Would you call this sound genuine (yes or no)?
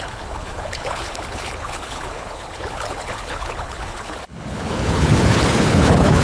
no